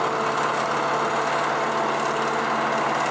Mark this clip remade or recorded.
recorded